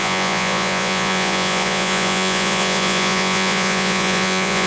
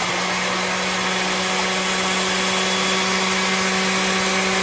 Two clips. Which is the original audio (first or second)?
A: second